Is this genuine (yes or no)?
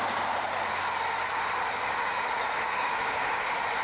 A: yes